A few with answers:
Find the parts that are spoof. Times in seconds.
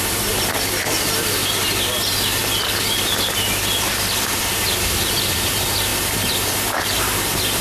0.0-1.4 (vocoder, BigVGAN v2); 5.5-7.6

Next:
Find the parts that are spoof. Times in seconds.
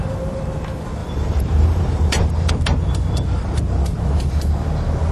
1.0-2.5 (vocoder, BigVGAN v2)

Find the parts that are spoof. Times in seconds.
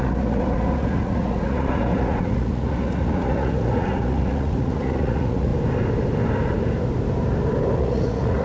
0.0-5.5 (vocoder, Vocos); 7.7-8.4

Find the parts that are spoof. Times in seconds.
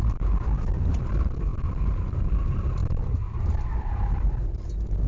0.0-5.1 (vocoder, BigVGAN v2)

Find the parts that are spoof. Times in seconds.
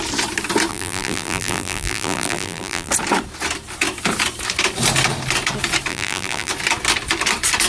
0.7-2.9 (vocoder, BigVGAN v2); 5.9-6.5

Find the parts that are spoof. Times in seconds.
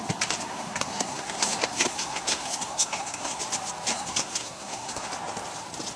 0.5-3.4 (codec, SNAC); 3.9-5.1